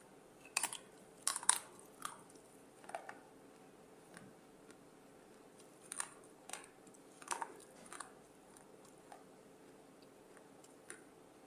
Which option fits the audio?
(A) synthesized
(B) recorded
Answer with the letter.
B